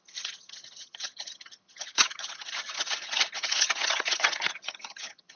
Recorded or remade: remade